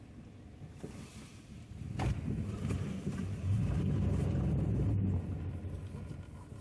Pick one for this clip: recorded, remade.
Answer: recorded